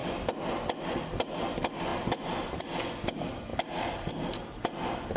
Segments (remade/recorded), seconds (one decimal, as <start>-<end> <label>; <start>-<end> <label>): 0.0-1.9 recorded; 1.9-2.6 remade; 2.6-5.2 recorded